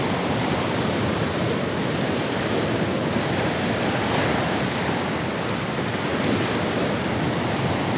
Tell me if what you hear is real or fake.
real